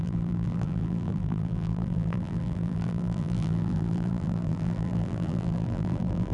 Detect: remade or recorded remade